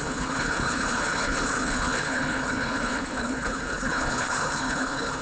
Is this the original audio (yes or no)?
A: no